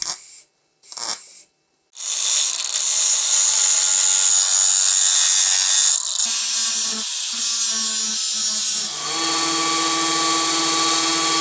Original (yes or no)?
yes